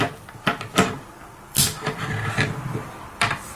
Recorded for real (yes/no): no